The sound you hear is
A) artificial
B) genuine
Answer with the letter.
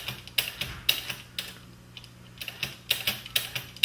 B